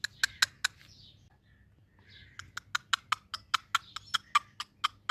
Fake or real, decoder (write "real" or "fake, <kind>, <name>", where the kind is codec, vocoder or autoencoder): real